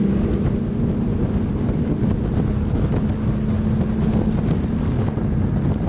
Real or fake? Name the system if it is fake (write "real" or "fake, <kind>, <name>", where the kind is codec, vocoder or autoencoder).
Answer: real